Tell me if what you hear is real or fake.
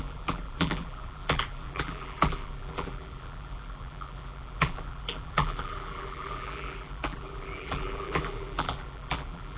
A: fake